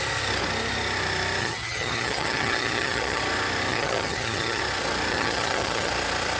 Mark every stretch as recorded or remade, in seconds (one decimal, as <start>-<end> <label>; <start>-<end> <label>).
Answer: 0.0-1.4 recorded; 1.4-3.2 remade; 3.2-3.7 recorded; 3.7-4.6 remade; 4.6-5.1 recorded; 5.1-5.9 remade; 5.9-6.4 recorded